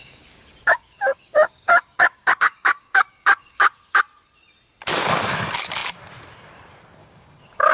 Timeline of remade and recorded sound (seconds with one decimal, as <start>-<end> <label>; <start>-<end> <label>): 0.0-4.0 remade; 4.0-7.0 recorded; 7.0-7.7 remade